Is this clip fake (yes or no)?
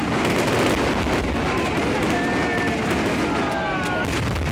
no